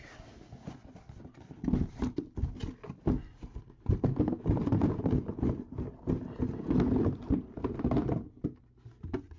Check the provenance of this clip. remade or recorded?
recorded